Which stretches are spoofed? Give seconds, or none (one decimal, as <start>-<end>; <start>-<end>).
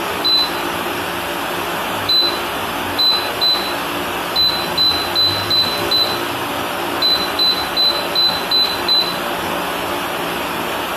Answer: none